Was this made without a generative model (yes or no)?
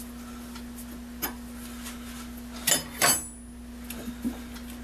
yes